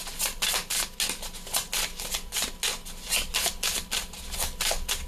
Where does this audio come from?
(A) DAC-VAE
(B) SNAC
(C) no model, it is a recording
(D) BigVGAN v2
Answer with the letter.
C